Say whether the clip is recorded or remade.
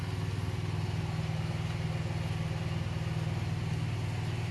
recorded